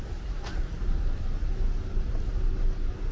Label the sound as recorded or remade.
recorded